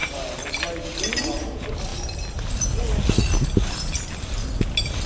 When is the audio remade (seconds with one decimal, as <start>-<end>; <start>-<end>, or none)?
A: none